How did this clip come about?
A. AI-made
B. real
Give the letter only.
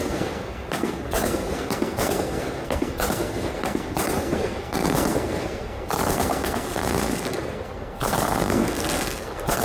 A